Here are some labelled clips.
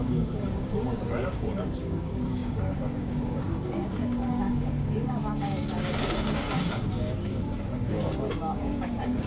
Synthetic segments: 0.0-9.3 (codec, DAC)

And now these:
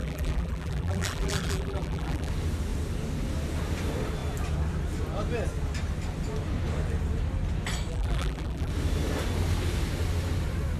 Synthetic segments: 0.0-2.3 (vocoder, BigVGAN v2); 7.9-8.7